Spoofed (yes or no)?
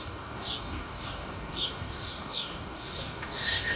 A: yes